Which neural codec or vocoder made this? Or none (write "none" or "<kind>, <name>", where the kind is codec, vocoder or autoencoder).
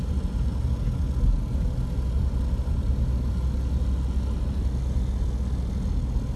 none